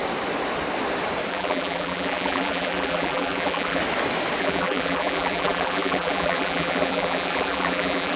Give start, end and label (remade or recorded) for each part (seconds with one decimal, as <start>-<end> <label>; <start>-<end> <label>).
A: 0.0-1.3 recorded; 1.3-3.8 remade; 3.8-4.4 recorded; 4.4-8.2 remade